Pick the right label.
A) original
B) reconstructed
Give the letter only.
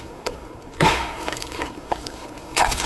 B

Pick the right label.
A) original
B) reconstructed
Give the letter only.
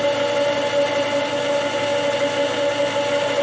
A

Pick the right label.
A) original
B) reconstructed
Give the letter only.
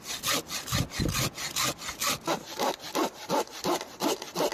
A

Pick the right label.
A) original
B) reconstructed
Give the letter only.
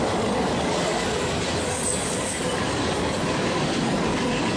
B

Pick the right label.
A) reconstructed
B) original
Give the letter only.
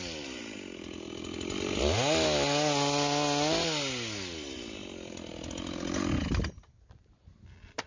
B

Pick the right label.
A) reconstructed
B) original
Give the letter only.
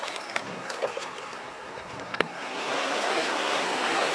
A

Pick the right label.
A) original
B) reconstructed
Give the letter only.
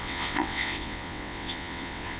B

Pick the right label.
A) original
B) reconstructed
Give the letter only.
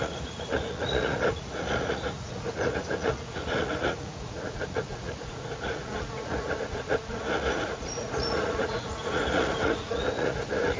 B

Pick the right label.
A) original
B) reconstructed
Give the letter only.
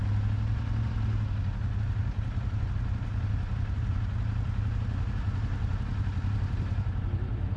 A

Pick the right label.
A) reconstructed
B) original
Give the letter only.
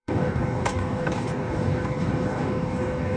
A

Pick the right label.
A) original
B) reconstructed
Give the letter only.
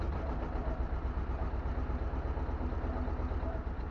A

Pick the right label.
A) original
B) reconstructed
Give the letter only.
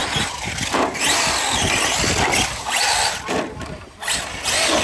A